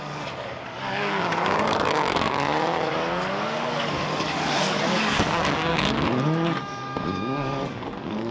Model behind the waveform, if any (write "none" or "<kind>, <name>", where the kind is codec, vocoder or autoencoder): codec, DAC